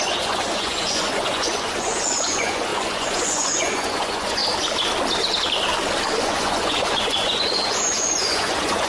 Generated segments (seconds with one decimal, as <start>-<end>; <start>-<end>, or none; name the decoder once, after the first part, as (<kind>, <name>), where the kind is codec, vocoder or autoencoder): 0.0-4.4 (vocoder, Vocos); 6.2-8.9